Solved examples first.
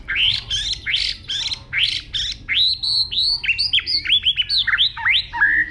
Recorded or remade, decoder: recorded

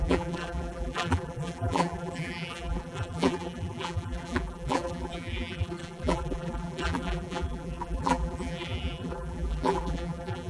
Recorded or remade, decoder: remade, vocoder, BigVGAN v2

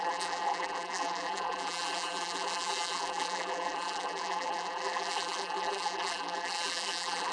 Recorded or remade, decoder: remade, vocoder, BigVGAN v2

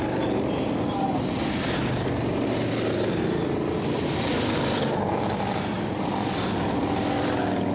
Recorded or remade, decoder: recorded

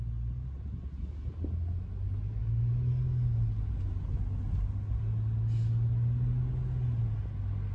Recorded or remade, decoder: recorded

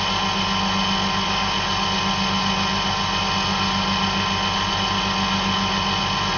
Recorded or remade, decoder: recorded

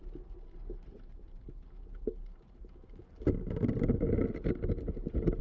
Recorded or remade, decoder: recorded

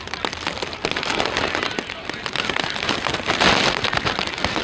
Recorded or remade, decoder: recorded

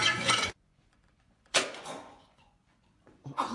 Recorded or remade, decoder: remade, vocoder, Vocos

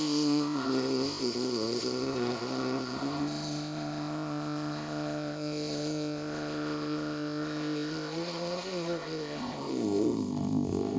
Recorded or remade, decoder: remade, codec, ZipCodec